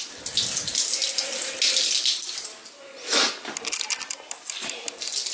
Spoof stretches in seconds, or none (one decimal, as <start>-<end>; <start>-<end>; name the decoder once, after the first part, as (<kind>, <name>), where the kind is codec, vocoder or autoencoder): none